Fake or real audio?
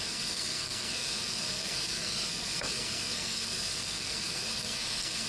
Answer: fake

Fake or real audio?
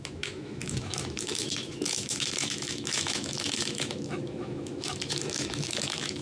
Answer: fake